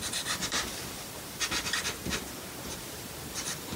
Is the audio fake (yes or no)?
yes